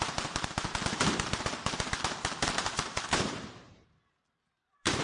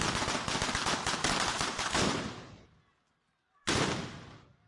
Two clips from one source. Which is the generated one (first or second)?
first